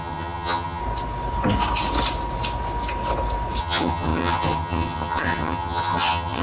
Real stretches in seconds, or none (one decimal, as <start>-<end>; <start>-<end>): 0.8-3.6